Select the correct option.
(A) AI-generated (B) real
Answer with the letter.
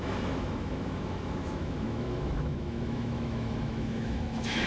A